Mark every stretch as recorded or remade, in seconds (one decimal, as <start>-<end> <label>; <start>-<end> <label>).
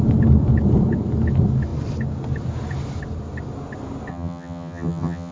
0.0-4.1 recorded; 4.1-5.3 remade